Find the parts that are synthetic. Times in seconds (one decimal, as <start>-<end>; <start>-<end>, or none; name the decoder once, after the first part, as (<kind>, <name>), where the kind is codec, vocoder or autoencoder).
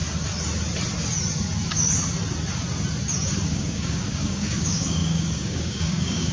3.5-6.3 (codec, DAC)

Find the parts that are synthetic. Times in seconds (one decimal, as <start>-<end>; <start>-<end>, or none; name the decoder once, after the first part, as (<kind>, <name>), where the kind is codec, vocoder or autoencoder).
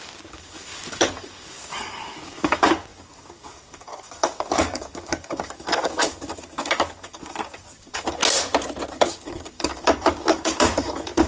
0.0-8.2 (codec, DAC); 8.9-11.3